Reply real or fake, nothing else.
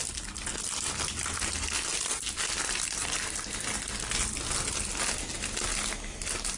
real